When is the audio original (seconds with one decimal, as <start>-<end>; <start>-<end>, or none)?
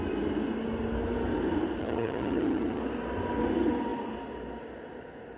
0.0-1.8; 2.8-5.4